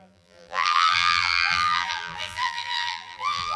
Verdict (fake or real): fake